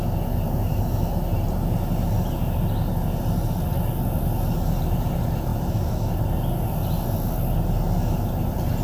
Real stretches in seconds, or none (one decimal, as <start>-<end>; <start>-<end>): 0.0-8.8